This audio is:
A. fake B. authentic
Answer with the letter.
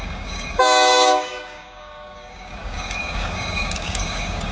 A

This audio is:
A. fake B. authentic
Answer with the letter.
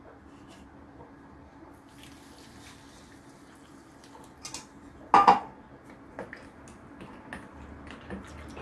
B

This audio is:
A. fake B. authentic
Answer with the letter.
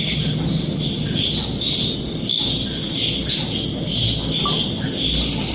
B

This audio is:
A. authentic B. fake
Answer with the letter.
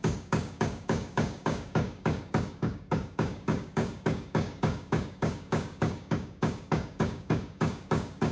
B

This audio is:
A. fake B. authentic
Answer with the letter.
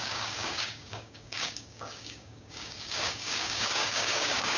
A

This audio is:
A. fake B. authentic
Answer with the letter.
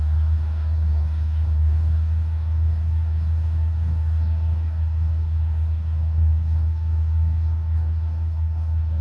A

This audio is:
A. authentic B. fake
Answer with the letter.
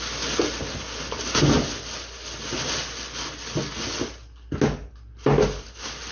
A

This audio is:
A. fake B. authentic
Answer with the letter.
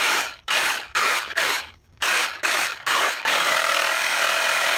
A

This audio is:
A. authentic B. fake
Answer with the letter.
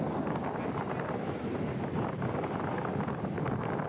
A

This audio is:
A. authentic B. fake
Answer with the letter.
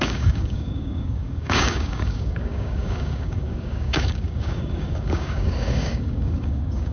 B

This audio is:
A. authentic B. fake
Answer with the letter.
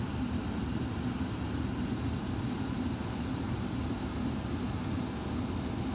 A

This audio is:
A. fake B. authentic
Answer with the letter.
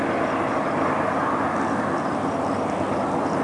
B